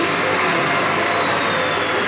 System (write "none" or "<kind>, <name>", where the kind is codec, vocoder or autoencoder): none